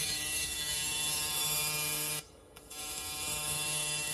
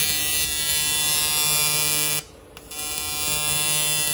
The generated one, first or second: first